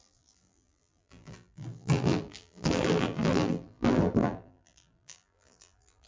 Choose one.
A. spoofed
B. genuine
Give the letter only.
A